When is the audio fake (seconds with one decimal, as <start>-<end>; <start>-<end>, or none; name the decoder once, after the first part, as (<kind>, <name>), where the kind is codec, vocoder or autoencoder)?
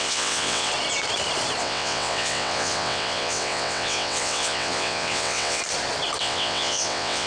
0.0-0.7 (vocoder, WaveNeXt); 1.6-5.6; 6.2-7.3